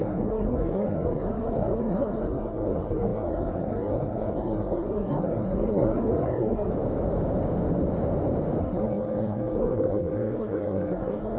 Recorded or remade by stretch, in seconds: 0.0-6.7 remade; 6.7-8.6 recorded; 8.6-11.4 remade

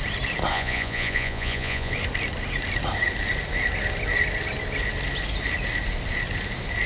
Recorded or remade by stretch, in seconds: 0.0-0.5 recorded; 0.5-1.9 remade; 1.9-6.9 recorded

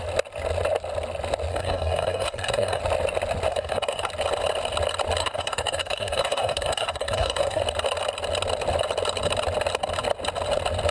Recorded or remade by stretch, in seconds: 0.0-1.5 recorded; 1.5-2.8 remade; 2.8-3.5 recorded; 3.5-4.1 remade; 4.1-5.2 recorded; 5.2-7.6 remade; 7.6-10.9 recorded

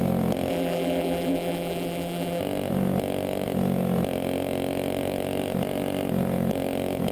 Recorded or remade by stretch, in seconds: 0.0-0.5 recorded; 0.5-2.4 remade; 2.4-7.1 recorded

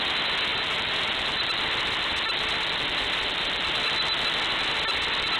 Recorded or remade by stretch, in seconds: 0.0-0.5 recorded; 0.5-3.7 remade; 3.7-5.4 recorded

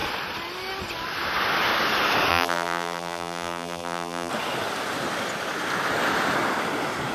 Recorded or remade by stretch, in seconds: 0.0-2.3 recorded; 2.3-4.3 remade; 4.3-7.1 recorded

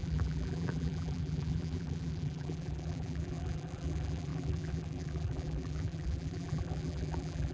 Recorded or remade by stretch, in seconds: 0.0-7.5 remade